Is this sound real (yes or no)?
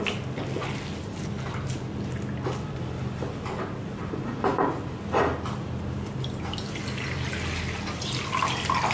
yes